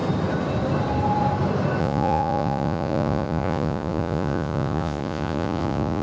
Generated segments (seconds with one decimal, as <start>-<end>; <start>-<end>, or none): 1.8-6.0